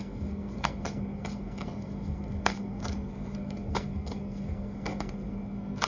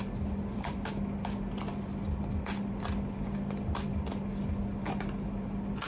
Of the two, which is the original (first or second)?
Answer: second